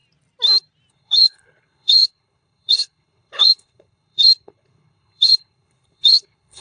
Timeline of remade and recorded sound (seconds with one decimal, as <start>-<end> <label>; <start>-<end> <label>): 0.0-0.9 recorded; 0.9-6.6 remade